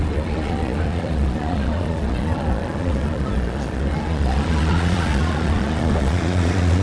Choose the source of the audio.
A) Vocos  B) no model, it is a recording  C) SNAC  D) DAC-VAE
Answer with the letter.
A